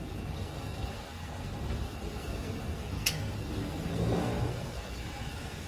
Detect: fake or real fake